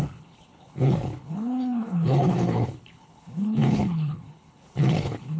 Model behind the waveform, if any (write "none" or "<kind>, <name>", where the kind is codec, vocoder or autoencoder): codec, HILCodec